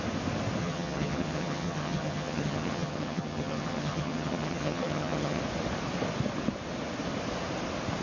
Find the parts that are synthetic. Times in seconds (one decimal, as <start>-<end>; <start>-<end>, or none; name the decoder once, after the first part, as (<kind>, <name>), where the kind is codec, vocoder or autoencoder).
0.6-5.4 (vocoder, HiFi-GAN)